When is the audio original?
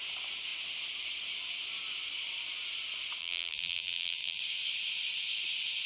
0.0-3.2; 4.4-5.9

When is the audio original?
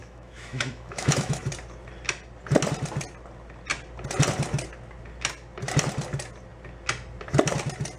1.5-8.0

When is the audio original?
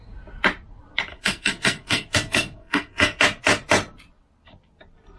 0.0-1.1; 3.2-5.2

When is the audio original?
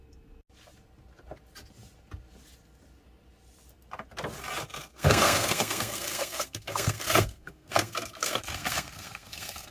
0.0-4.8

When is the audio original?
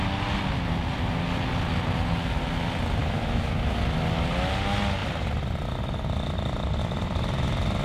0.0-3.0; 3.8-7.8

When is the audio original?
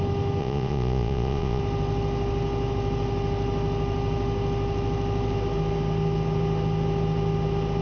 0.0-0.4; 1.6-7.8